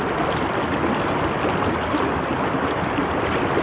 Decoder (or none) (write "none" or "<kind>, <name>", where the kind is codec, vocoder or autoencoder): none